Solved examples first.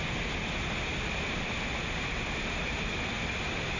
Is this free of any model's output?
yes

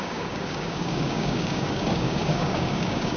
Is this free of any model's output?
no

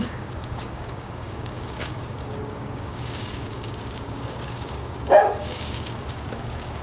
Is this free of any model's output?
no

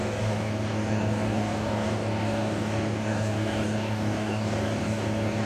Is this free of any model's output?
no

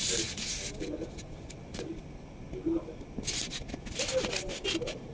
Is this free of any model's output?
yes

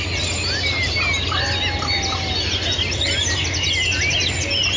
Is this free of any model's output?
yes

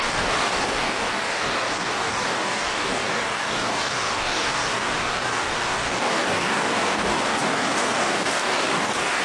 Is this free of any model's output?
no